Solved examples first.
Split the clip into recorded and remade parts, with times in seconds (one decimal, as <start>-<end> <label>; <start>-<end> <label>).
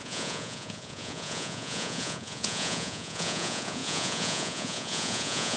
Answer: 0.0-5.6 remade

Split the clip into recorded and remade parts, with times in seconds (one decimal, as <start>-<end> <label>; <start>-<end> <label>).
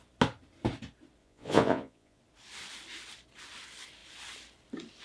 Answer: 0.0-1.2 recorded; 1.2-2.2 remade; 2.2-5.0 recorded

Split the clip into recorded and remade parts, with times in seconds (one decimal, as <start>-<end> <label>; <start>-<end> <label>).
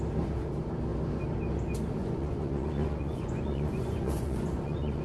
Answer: 0.0-2.0 recorded; 2.0-5.0 remade